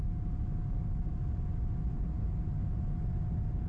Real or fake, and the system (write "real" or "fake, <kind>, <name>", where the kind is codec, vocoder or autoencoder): real